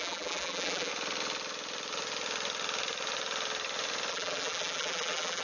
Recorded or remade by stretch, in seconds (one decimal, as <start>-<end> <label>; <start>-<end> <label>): 0.0-0.9 remade; 0.9-4.1 recorded; 4.1-5.4 remade